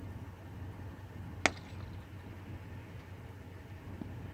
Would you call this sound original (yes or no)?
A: yes